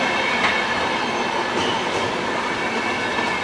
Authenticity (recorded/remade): recorded